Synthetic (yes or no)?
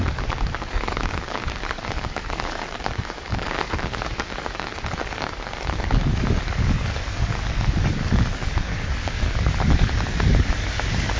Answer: yes